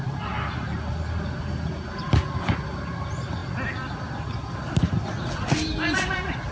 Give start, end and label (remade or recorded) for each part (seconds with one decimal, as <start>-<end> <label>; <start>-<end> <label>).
0.0-6.5 recorded